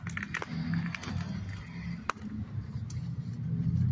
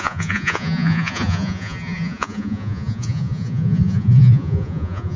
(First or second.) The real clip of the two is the first